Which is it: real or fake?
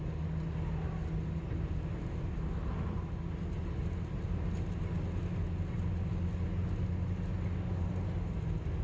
real